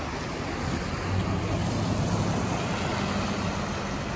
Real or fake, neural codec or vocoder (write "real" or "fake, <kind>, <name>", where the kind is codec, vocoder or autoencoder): real